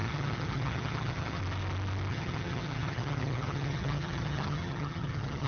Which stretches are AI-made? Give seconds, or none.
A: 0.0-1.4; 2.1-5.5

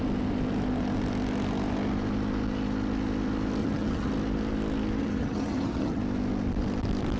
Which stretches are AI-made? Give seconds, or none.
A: 3.6-4.1; 5.0-6.0

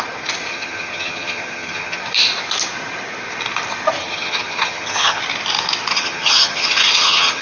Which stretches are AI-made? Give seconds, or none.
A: 0.5-2.0; 4.0-5.2; 5.9-7.4

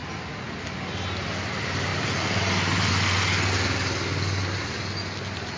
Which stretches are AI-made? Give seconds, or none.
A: none

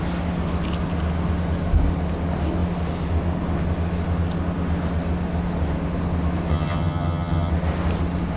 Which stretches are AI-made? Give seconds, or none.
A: 6.5-7.5